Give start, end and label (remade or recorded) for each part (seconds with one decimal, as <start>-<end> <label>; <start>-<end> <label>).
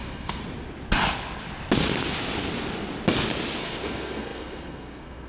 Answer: 0.0-0.4 remade; 0.4-3.6 recorded; 3.6-5.3 remade